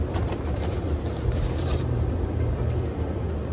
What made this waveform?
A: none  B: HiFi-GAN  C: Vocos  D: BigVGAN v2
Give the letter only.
A